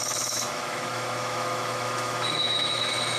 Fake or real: fake